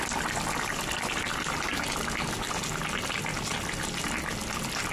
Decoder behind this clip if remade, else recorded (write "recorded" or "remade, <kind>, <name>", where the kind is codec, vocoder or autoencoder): recorded